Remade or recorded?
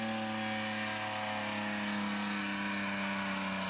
recorded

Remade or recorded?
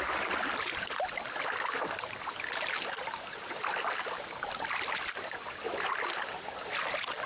recorded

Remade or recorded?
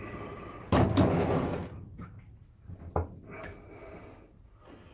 recorded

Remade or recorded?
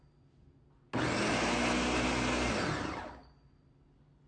recorded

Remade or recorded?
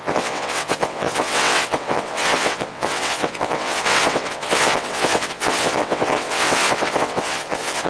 remade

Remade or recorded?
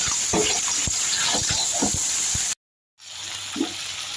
recorded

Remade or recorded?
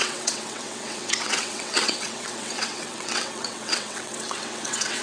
remade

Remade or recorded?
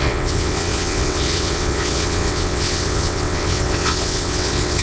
remade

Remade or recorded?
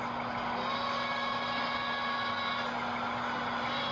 recorded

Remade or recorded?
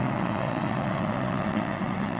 remade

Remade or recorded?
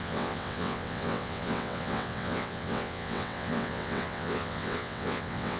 remade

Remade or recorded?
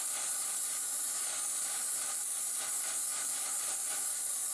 recorded